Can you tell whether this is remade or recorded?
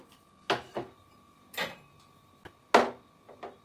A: recorded